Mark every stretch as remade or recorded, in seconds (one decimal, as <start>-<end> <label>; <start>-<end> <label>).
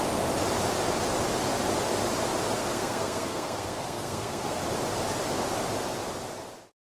0.0-2.6 recorded; 2.6-4.6 remade; 4.6-6.8 recorded